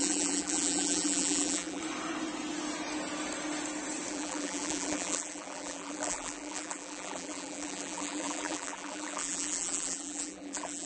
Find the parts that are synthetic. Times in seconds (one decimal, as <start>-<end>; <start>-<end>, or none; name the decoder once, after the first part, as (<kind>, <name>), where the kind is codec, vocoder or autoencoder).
0.0-1.8 (vocoder, BigVGAN v2); 4.1-10.9